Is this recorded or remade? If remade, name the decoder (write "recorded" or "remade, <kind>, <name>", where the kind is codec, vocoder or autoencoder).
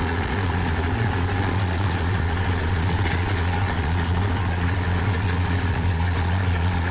remade, vocoder, Vocos